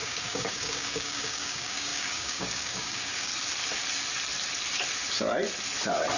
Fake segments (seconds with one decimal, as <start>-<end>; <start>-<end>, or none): 0.0-3.3